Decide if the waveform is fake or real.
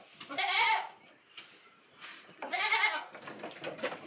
real